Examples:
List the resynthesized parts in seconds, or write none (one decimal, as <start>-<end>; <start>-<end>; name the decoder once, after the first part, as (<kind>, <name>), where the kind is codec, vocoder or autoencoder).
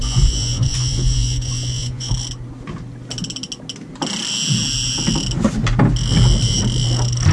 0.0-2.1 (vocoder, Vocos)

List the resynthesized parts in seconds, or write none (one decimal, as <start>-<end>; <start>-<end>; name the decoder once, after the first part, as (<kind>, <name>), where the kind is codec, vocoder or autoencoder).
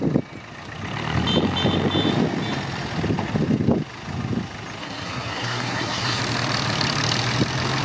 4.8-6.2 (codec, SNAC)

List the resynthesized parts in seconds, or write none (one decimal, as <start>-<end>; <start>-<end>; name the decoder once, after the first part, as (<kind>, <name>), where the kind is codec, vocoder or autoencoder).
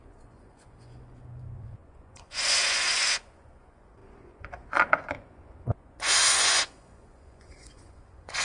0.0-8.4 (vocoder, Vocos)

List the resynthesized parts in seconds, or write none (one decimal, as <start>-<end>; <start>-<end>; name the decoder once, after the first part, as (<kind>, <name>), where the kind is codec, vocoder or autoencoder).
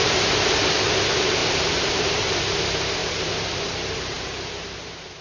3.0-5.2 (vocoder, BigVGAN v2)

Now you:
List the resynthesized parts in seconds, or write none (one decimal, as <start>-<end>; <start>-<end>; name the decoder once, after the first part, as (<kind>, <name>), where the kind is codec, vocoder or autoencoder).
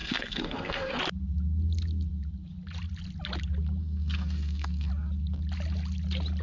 0.0-1.0 (codec, SNAC); 3.8-4.9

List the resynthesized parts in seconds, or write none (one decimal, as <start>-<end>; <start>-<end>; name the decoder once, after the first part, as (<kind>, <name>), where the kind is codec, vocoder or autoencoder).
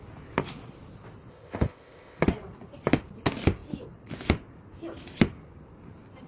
1.3-2.2 (codec, ZipCodec)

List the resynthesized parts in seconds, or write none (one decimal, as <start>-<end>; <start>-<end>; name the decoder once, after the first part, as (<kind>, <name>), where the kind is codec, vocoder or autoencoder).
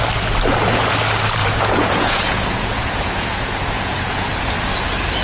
1.4-4.5 (vocoder, Vocos)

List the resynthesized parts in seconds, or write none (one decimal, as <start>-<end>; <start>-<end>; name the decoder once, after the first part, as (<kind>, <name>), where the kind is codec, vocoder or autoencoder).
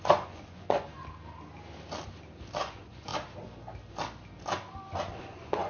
0.0-1.0 (vocoder, Vocos); 2.6-3.1; 5.2-5.7